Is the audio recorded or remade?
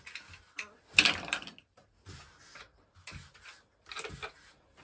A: recorded